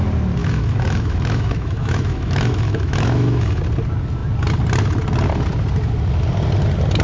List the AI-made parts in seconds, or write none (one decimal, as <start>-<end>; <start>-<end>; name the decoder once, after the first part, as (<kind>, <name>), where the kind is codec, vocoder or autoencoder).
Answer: 0.4-3.6 (autoencoder, DAC-VAE)